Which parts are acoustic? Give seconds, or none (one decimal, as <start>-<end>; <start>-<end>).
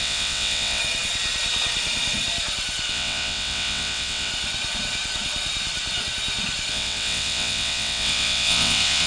0.8-2.9; 4.3-6.7